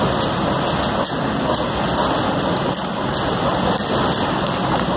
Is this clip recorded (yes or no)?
yes